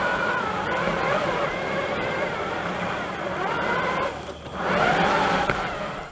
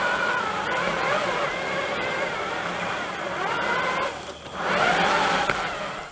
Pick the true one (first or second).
second